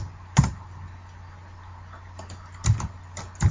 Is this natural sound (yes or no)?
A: yes